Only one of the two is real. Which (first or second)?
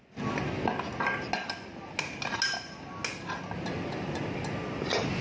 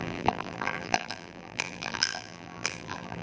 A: first